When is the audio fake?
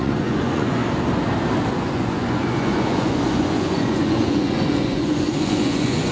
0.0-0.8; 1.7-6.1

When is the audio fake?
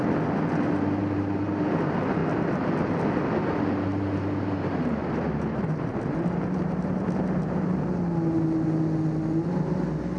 1.0-1.5; 3.9-7.8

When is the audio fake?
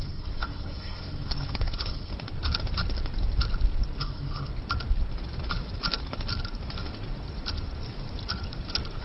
0.0-2.1; 4.0-4.5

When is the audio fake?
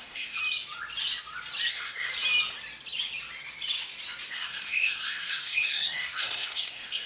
0.0-0.4; 1.7-2.1; 4.3-7.1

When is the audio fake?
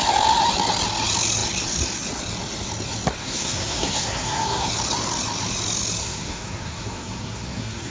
3.2-4.7; 6.0-7.9